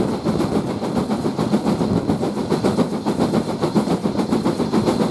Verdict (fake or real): real